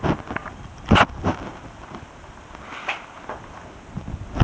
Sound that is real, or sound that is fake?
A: real